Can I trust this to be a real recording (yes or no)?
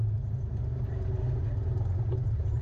yes